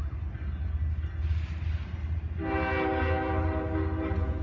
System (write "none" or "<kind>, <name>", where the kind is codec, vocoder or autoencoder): none